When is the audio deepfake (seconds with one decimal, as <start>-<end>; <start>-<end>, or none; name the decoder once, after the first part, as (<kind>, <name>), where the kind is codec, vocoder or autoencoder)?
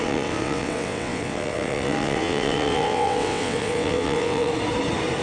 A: 0.0-4.5 (vocoder, WaveNeXt)